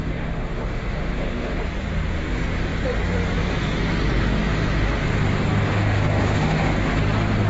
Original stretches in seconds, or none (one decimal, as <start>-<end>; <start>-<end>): 1.6-5.6; 6.9-7.5

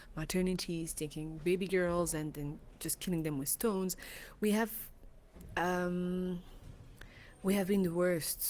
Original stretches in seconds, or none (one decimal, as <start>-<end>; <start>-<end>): 2.0-8.5

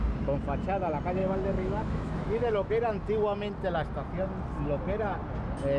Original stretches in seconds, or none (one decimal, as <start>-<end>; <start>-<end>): 0.0-1.2; 2.7-5.8

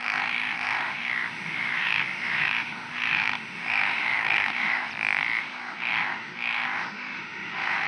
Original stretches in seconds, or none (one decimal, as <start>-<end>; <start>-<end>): 4.9-5.4